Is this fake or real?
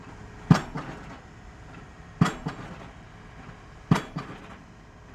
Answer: real